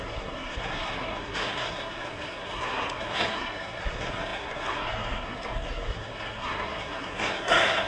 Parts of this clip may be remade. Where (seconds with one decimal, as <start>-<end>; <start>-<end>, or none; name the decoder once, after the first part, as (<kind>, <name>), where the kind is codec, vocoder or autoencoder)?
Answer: 0.0-7.9 (codec, SNAC)